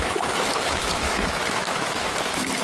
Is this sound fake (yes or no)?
yes